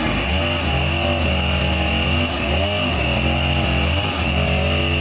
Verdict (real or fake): real